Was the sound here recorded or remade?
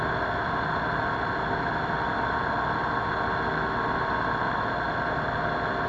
recorded